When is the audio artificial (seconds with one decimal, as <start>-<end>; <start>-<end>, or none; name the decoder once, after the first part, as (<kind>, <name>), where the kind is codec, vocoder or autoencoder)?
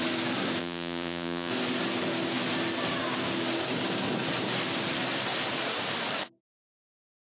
0.6-1.5 (vocoder, Vocos)